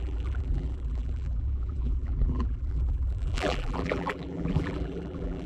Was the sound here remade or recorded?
remade